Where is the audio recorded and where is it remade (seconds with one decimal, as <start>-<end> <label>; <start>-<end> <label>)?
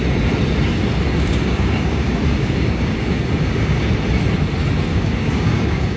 0.0-1.1 recorded; 1.1-3.9 remade; 3.9-4.9 recorded; 4.9-6.0 remade